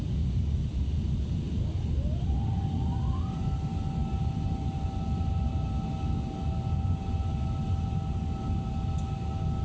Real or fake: real